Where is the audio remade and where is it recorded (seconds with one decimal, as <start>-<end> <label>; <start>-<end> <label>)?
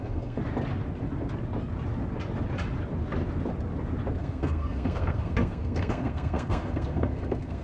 0.0-0.4 remade; 0.4-4.2 recorded; 4.2-7.6 remade